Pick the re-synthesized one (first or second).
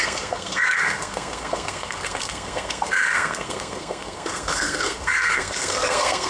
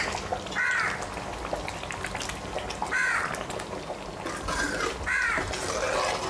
first